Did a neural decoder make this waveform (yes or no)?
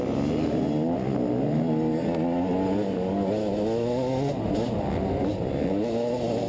no